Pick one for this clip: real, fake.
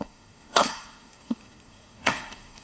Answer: fake